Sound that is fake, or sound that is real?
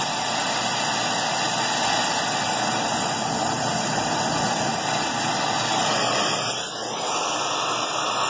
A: real